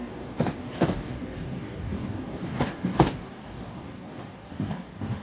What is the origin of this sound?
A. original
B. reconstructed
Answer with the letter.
B